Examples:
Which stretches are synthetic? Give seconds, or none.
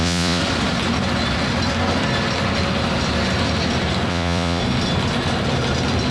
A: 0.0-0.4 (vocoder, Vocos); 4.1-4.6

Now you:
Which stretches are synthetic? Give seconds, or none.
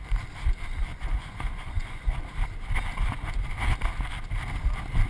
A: 0.9-2.1 (vocoder, Vocos)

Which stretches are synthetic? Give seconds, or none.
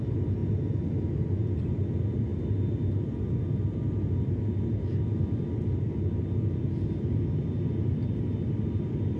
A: none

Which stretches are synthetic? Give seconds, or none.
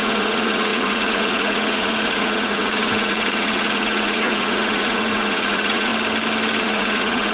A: 0.0-5.9 (vocoder, Vocos); 6.6-7.3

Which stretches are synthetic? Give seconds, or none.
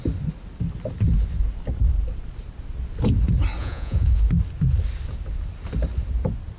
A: 3.6-4.2 (vocoder, Vocos)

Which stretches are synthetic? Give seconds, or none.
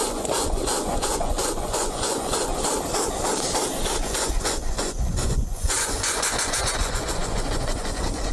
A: 0.0-2.5 (vocoder, Vocos); 4.0-8.3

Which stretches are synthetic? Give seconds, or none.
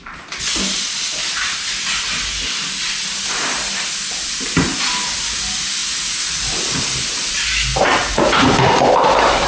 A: 5.8-6.4 (vocoder, Vocos); 8.0-8.5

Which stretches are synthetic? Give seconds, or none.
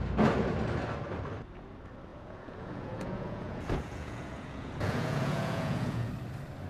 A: 2.1-6.1 (vocoder, Vocos)